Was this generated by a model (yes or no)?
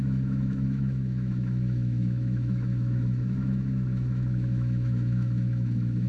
yes